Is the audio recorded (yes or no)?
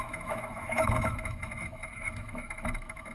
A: no